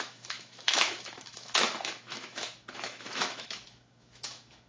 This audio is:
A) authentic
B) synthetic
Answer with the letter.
B